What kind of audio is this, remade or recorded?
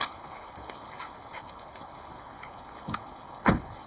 remade